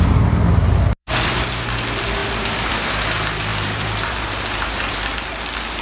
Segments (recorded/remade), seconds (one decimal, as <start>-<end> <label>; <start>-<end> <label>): 0.0-1.0 recorded; 1.0-1.6 remade; 1.6-3.5 recorded; 3.5-5.0 remade; 5.0-5.8 recorded

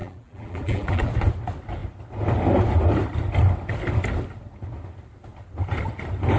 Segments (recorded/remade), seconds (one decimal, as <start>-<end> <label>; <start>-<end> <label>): 0.0-1.1 remade; 1.1-6.4 recorded